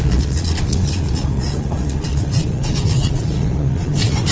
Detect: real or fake fake